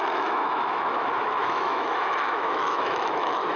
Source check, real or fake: fake